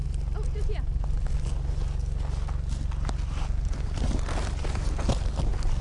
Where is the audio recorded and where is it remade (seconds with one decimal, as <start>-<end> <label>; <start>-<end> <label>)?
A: 0.0-5.8 recorded